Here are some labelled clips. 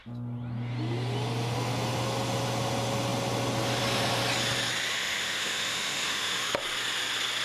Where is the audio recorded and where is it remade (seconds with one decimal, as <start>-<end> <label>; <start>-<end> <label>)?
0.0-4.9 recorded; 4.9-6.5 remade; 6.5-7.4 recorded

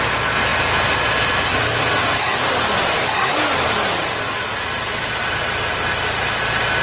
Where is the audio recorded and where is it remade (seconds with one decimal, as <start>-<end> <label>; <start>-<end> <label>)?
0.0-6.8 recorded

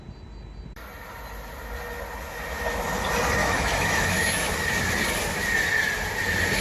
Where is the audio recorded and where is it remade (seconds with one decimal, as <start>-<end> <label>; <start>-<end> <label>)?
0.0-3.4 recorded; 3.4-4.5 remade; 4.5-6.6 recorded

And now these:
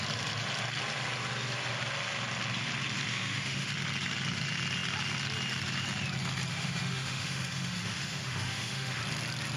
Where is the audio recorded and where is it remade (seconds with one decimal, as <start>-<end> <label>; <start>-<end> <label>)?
0.0-3.1 recorded; 3.1-3.7 remade; 3.7-6.5 recorded; 6.5-9.0 remade; 9.0-9.6 recorded

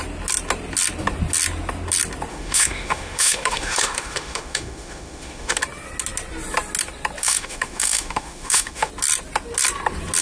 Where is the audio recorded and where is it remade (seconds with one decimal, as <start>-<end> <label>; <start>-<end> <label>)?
0.0-2.3 recorded; 2.3-5.6 remade; 5.6-7.2 recorded; 7.2-8.9 remade; 8.9-10.2 recorded

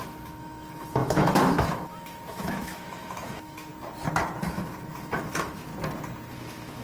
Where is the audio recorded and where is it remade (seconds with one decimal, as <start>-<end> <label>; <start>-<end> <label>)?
0.0-3.7 remade; 3.7-4.4 recorded; 4.4-5.7 remade; 5.7-6.3 recorded; 6.3-6.8 remade